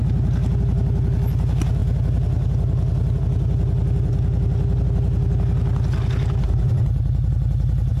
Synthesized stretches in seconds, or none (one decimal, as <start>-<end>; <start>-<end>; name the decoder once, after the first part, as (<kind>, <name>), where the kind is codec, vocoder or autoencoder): none